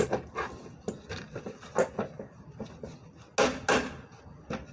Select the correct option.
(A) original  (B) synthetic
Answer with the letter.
A